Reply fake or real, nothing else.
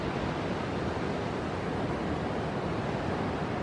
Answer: real